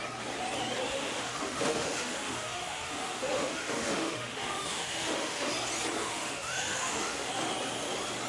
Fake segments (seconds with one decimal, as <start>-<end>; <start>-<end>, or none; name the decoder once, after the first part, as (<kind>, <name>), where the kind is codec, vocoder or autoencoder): 0.9-5.5 (autoencoder, DAC-VAE); 6.0-7.3